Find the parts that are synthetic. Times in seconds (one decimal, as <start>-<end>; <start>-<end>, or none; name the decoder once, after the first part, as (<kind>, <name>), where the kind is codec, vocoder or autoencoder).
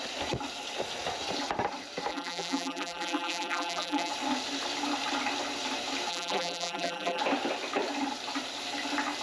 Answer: 2.1-4.1 (vocoder, BigVGAN v2); 6.1-7.2